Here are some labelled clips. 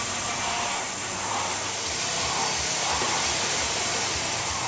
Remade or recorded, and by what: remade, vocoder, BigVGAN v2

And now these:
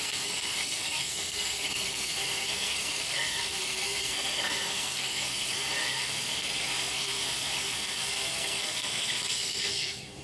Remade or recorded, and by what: remade, codec, SNAC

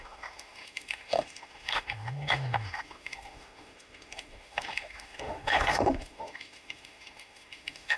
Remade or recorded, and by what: remade, autoencoder, DAC-VAE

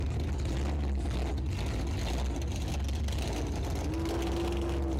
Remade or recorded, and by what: recorded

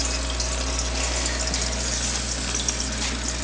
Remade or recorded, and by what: recorded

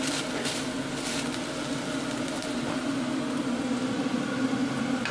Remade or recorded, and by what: recorded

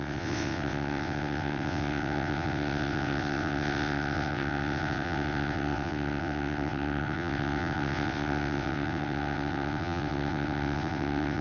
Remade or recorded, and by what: remade, vocoder, WaveNeXt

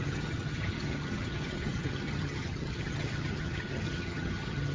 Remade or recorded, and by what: remade, vocoder, HiFi-GAN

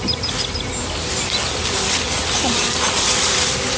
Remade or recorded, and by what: recorded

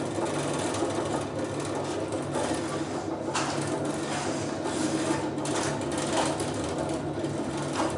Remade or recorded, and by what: recorded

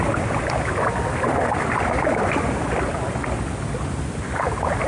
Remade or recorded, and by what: recorded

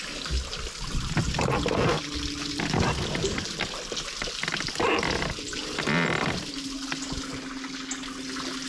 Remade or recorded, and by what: recorded